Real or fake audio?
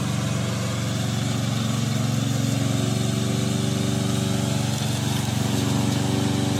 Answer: real